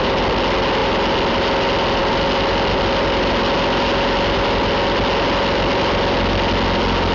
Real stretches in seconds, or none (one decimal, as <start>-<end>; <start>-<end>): 0.0-7.1